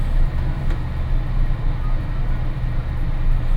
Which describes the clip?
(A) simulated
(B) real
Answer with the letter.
B